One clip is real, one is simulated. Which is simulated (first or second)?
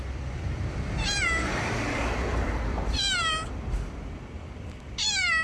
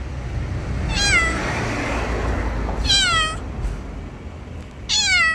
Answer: first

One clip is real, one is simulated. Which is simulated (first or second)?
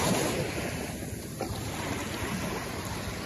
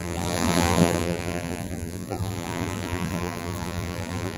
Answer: second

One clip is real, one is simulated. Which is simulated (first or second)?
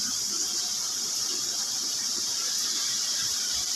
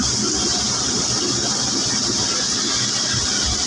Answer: first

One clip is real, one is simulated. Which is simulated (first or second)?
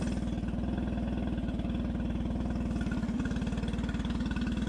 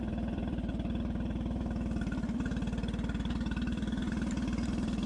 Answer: second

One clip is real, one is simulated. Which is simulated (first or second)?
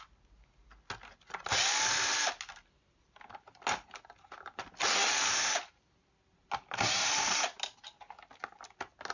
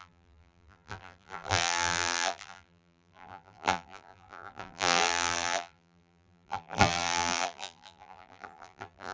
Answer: second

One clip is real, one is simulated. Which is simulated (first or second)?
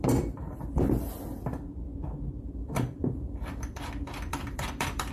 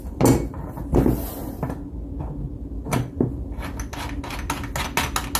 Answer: first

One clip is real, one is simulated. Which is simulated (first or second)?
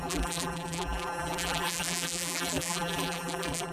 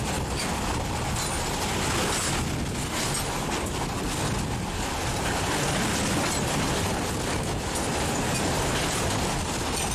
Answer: first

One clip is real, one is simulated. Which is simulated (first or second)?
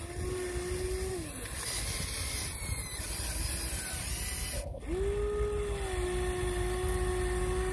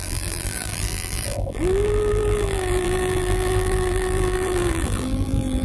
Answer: second